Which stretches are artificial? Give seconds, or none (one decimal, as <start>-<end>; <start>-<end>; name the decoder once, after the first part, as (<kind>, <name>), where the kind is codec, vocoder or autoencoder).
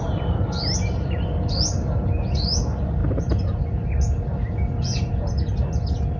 none